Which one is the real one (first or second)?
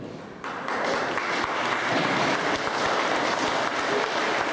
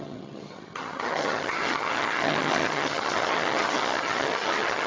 first